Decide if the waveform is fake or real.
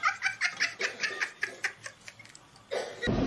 real